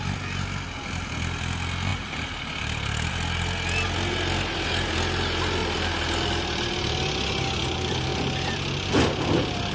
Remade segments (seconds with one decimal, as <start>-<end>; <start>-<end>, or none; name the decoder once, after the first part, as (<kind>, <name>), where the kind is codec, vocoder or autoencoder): none